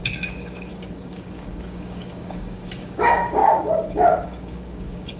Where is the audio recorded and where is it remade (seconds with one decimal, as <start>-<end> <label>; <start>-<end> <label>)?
0.0-5.2 remade